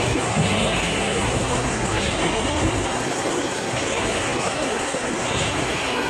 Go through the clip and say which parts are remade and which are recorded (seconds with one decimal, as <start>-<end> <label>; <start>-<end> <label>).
0.0-6.1 remade